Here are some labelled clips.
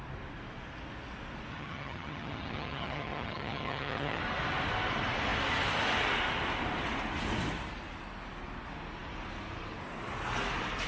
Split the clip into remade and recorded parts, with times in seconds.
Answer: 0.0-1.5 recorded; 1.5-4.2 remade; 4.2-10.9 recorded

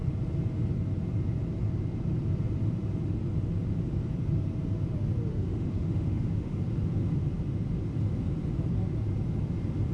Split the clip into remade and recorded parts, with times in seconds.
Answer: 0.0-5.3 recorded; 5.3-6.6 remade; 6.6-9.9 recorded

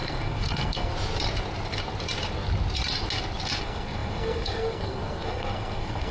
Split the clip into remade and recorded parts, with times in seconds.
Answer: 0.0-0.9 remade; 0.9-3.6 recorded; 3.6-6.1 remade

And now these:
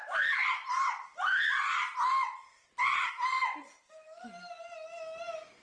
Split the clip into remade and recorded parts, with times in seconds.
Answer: 0.0-5.6 recorded

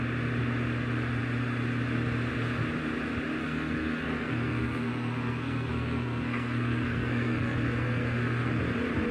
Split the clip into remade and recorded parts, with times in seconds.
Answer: 0.0-3.4 recorded; 3.4-8.6 remade; 8.6-9.1 recorded